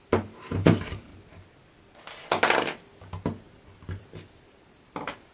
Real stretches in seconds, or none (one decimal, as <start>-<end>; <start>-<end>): 1.1-4.0